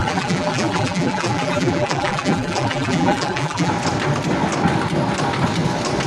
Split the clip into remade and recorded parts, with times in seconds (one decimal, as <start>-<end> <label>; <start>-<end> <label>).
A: 0.0-3.7 remade; 3.7-6.1 recorded